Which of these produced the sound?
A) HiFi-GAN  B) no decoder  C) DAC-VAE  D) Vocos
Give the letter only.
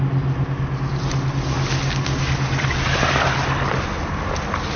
B